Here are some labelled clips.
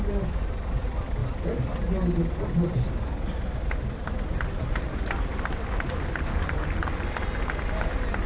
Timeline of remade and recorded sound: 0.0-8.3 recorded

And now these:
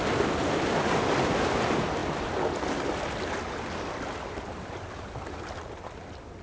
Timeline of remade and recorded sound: 0.0-6.4 recorded

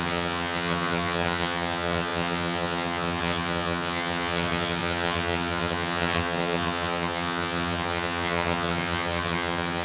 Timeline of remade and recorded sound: 0.0-9.8 remade

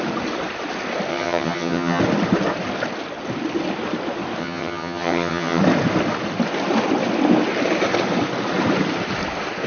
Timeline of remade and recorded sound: 0.0-1.1 recorded; 1.1-2.0 remade; 2.0-4.4 recorded; 4.4-5.6 remade; 5.6-9.7 recorded

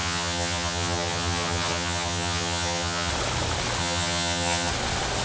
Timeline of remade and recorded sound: 0.0-3.1 remade; 3.1-3.8 recorded; 3.8-4.7 remade; 4.7-5.2 recorded

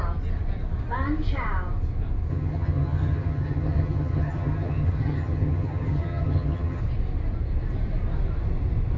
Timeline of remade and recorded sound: 0.0-2.3 recorded; 2.3-6.8 remade; 6.8-9.0 recorded